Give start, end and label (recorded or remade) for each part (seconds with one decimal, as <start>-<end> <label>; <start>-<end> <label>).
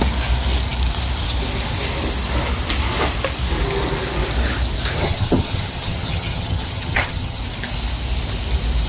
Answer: 0.0-5.0 recorded; 5.0-7.4 remade; 7.4-8.9 recorded